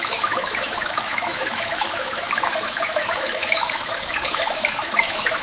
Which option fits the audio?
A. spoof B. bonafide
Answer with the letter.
A